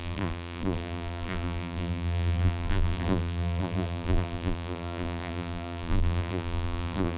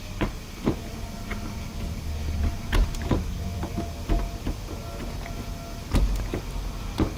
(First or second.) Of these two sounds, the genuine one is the second